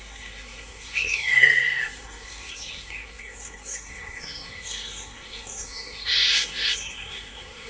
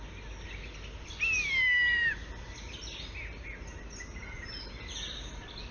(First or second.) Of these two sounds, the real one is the second